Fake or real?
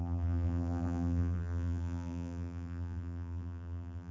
fake